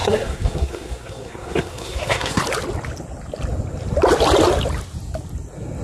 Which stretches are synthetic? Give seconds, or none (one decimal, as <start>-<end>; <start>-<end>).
0.0-2.4

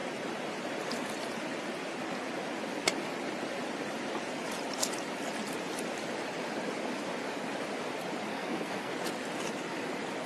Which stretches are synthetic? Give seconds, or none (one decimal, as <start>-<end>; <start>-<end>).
8.3-8.9

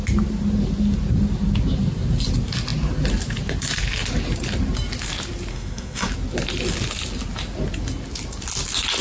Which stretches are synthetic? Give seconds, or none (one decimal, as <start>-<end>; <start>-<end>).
5.5-6.1

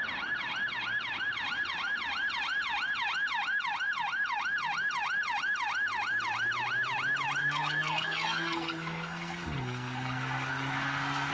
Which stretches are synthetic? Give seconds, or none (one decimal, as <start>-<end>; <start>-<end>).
7.4-11.3

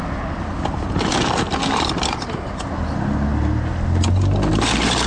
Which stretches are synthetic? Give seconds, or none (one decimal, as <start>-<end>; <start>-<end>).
none

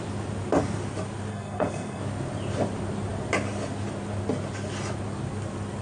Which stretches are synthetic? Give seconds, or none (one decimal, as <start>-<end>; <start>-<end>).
1.3-2.0

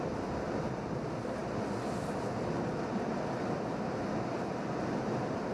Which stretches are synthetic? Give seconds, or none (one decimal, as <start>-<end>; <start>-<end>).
none